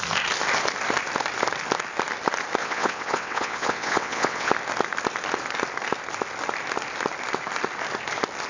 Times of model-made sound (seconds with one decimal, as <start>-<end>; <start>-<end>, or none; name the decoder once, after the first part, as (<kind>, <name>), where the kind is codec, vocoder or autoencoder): 2.6-4.5 (vocoder, WaveNeXt)